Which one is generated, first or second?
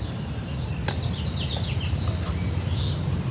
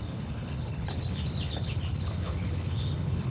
second